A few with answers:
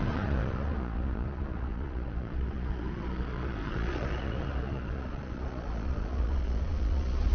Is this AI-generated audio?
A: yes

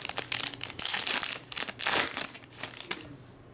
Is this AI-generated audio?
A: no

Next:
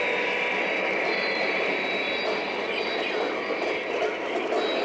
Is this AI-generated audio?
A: no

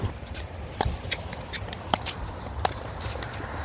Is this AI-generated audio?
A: yes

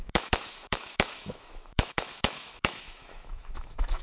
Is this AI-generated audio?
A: yes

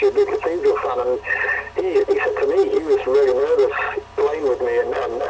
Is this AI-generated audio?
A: no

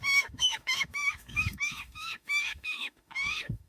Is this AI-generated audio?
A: yes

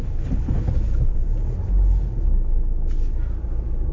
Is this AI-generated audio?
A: no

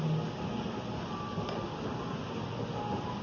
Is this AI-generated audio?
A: no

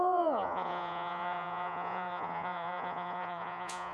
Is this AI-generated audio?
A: yes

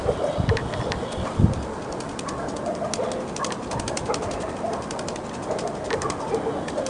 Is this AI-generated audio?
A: no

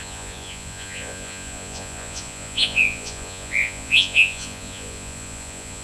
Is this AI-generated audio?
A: yes